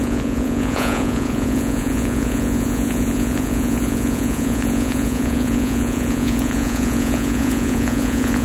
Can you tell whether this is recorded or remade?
remade